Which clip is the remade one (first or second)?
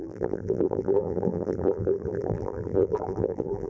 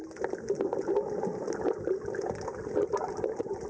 first